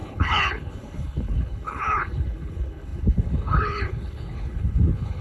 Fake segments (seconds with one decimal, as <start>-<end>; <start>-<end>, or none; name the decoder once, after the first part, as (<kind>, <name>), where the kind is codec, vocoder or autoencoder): 0.0-5.2 (codec, HILCodec)